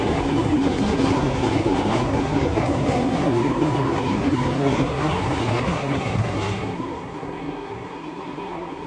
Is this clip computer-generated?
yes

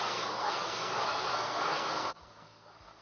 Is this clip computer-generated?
yes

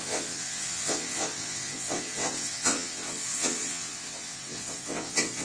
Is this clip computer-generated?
yes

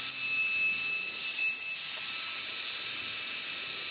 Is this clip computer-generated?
no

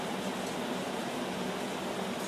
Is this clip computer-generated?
no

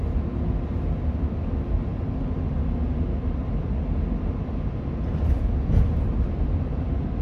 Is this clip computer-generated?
no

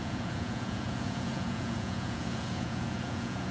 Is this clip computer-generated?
yes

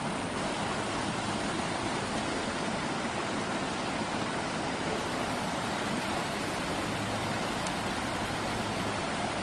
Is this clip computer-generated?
no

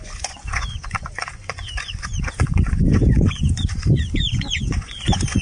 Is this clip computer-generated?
yes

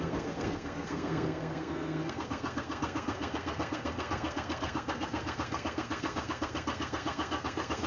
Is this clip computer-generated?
yes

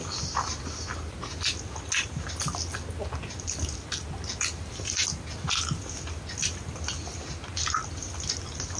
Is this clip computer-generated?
no